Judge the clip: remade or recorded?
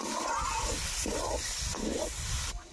recorded